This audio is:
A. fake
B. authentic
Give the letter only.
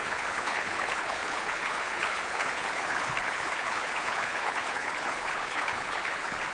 A